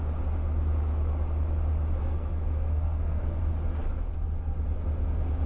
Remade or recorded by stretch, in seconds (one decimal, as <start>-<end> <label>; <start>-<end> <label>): 0.0-2.0 recorded; 2.0-3.4 remade; 3.4-5.5 recorded